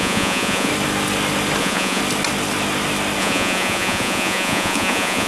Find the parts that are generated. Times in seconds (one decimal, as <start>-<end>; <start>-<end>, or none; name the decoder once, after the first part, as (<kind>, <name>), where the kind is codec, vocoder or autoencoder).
0.0-0.7 (vocoder, Vocos); 1.6-2.0; 3.2-5.3